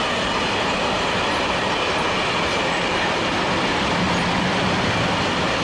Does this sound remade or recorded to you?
recorded